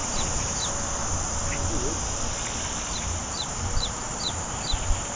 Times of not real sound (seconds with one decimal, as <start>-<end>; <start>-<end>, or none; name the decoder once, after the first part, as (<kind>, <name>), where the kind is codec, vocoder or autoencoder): 0.0-0.7 (vocoder, BigVGAN v2); 3.2-5.2